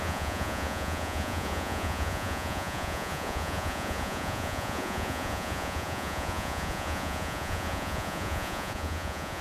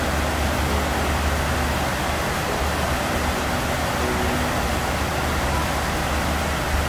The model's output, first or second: first